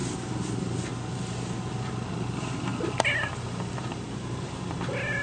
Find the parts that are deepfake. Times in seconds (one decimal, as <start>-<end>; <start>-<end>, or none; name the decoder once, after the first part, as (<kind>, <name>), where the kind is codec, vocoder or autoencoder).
2.1-2.7 (vocoder, BigVGAN v2); 3.8-5.2